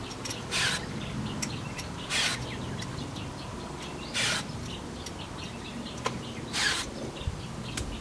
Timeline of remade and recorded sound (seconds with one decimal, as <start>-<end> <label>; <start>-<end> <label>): 0.0-8.0 recorded